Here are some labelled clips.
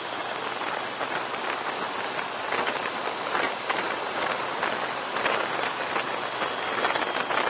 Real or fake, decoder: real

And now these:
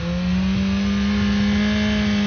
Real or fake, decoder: real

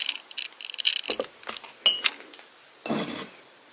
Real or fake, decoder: real